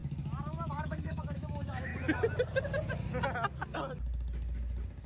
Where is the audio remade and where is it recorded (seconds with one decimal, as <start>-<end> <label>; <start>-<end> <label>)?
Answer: 0.0-0.7 recorded; 0.7-1.9 remade; 1.9-5.1 recorded